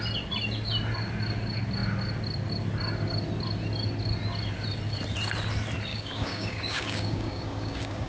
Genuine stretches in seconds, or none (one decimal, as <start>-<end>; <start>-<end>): 0.0-5.9